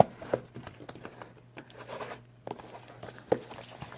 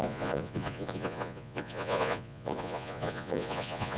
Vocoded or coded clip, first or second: second